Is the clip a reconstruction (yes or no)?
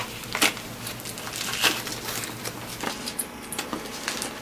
no